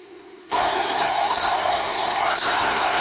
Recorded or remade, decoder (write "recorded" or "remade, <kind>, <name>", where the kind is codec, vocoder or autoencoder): remade, codec, SNAC